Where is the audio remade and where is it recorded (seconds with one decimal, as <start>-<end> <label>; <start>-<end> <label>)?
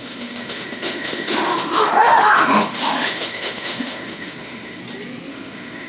0.0-4.8 remade; 4.8-5.3 recorded; 5.3-5.9 remade